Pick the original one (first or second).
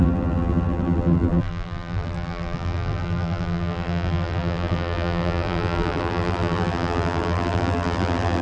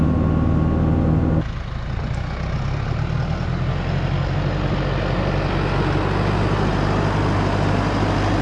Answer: second